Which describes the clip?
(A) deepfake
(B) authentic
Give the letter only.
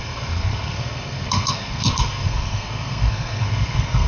A